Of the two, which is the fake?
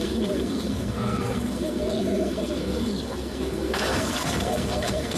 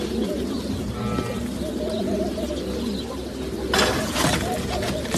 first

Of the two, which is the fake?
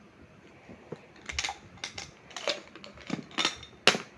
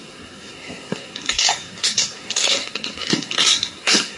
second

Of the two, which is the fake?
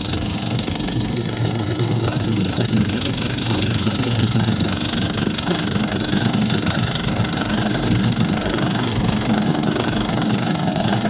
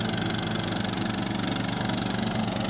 first